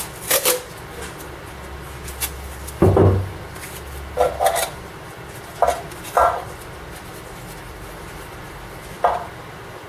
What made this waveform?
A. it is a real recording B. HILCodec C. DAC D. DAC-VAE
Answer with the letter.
A